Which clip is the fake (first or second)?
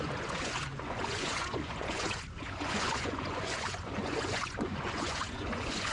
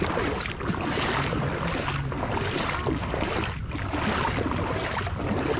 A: first